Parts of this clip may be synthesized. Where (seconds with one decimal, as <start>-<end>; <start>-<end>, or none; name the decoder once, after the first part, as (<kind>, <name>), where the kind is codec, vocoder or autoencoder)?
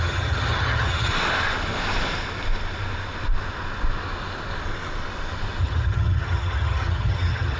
0.0-1.1 (vocoder, HiFi-GAN); 5.6-7.6